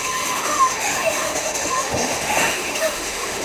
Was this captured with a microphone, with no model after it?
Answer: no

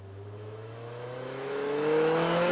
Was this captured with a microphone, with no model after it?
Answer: no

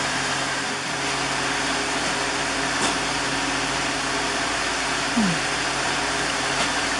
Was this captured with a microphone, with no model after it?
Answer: yes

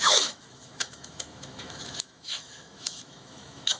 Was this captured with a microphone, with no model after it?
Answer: no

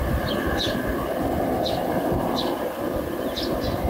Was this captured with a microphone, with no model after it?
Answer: yes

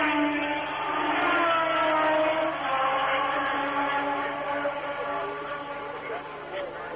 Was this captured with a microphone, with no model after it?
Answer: yes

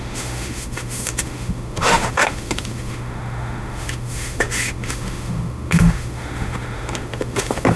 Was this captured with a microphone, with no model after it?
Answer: no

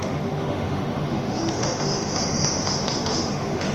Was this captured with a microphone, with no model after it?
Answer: no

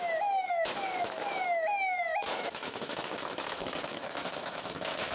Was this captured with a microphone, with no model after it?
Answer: no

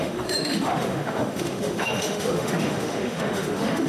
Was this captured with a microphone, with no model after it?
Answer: no